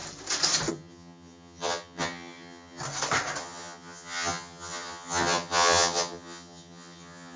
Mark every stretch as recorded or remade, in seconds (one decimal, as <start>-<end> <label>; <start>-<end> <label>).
0.0-0.7 recorded; 0.7-2.8 remade; 2.8-3.4 recorded; 3.4-7.4 remade